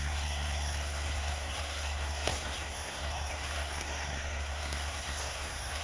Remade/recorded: remade